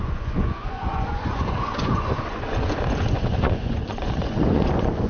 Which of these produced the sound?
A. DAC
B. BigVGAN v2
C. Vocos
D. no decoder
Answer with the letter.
C